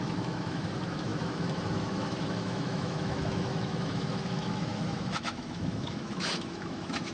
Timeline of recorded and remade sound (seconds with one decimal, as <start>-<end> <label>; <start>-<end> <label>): 0.0-7.1 remade